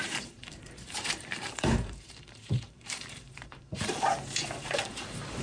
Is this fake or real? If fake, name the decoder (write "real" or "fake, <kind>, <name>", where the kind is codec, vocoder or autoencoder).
fake, vocoder, BigVGAN v2